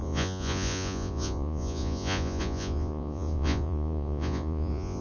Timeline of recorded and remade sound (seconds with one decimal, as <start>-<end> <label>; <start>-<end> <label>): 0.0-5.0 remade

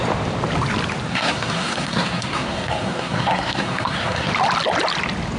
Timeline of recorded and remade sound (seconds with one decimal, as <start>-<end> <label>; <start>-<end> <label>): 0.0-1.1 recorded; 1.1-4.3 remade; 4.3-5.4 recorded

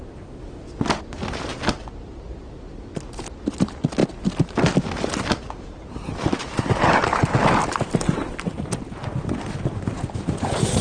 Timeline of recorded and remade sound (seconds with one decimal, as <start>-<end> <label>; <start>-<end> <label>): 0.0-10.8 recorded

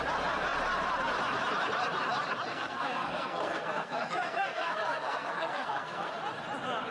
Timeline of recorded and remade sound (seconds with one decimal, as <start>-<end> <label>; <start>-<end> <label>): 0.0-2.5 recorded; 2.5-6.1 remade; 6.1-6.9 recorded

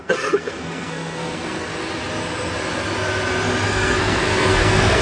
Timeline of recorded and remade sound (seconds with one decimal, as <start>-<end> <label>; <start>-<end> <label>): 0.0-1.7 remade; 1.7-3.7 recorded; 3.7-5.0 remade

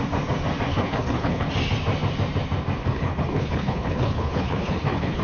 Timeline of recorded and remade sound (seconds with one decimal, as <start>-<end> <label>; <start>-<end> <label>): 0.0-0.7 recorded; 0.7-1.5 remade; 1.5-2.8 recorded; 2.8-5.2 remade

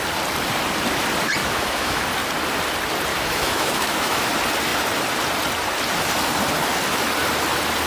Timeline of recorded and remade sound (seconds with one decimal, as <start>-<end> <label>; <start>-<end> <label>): 0.0-1.4 recorded; 1.4-2.0 remade; 2.0-3.1 recorded; 3.1-4.3 remade; 4.3-7.9 recorded

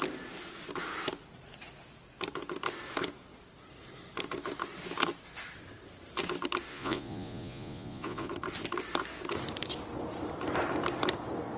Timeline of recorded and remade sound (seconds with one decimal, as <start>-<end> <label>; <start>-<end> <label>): 0.0-6.7 recorded; 6.7-8.3 remade; 8.3-11.6 recorded